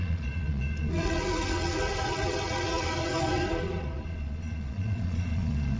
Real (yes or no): no